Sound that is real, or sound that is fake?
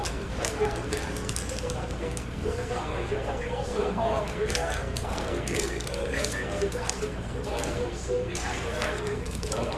fake